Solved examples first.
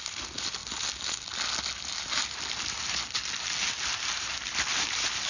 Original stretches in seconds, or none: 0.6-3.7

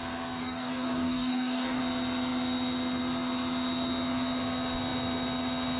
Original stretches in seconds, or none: 0.0-0.4; 1.8-5.8